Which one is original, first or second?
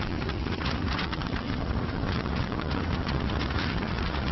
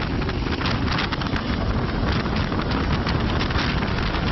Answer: second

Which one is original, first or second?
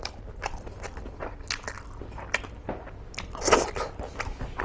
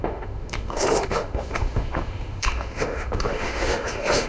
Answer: first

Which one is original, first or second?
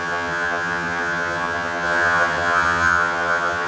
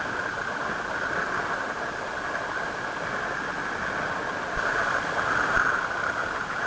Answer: second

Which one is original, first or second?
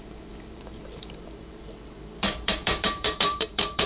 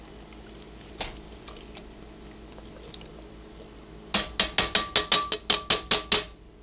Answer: second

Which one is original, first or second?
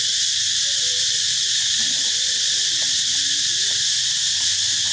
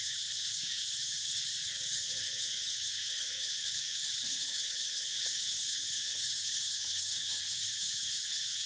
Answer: first